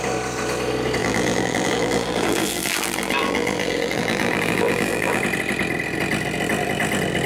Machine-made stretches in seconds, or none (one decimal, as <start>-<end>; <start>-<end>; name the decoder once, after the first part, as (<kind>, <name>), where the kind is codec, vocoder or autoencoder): 1.0-5.2 (vocoder, BigVGAN v2)